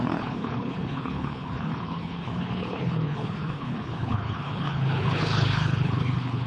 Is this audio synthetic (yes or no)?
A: yes